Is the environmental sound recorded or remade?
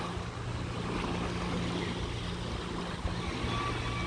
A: recorded